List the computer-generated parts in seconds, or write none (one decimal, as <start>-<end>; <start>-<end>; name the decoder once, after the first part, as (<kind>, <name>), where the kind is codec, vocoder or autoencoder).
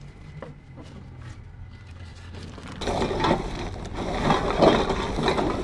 none